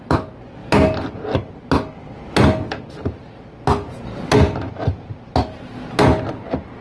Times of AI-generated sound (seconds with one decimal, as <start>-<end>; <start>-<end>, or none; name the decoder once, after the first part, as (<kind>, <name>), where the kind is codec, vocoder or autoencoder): none